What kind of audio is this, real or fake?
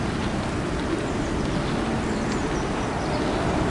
real